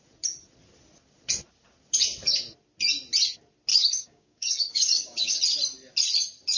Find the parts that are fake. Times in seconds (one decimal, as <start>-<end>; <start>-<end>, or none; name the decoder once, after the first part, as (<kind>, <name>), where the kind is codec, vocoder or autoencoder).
3.7-5.4 (codec, DAC)